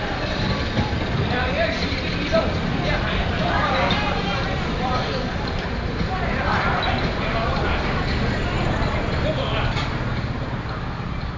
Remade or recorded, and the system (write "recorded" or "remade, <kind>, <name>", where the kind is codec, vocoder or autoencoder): remade, vocoder, BigVGAN v2